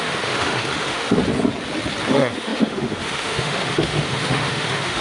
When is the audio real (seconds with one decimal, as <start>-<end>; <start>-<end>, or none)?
1.2-2.1